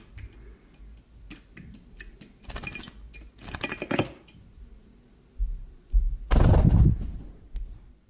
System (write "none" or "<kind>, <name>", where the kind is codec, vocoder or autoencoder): none